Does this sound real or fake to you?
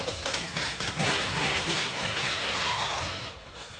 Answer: fake